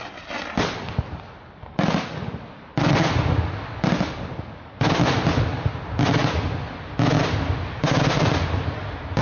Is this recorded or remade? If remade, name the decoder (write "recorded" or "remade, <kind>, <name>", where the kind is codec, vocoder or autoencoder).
recorded